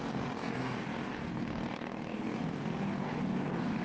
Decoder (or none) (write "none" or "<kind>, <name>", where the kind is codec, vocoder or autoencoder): codec, DAC